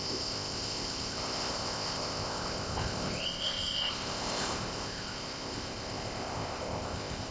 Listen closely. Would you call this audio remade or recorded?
remade